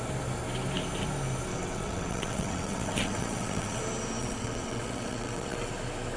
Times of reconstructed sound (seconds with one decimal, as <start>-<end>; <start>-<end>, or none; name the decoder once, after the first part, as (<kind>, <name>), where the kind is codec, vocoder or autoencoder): 1.5-3.8 (vocoder, WaveNeXt); 4.2-5.7